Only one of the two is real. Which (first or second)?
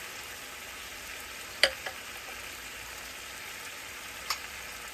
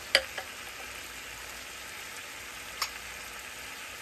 second